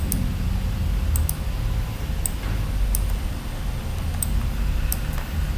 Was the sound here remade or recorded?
recorded